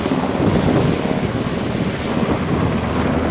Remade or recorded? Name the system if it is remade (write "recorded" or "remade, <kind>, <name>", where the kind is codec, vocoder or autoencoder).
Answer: recorded